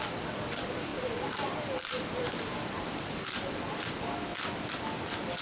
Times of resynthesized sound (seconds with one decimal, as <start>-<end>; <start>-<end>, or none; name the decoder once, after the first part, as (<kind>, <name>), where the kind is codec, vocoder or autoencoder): 0.9-4.1 (vocoder, BigVGAN v2)